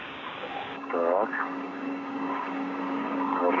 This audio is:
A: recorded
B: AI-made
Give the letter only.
B